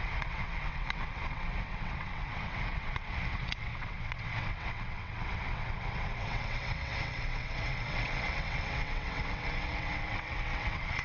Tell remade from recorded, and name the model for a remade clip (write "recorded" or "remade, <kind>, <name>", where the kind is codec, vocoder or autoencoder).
remade, vocoder, WaveNeXt